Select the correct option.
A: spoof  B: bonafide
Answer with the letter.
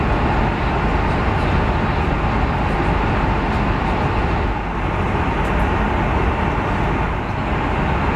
B